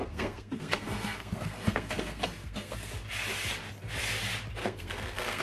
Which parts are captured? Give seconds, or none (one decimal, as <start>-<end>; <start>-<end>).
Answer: 2.9-4.6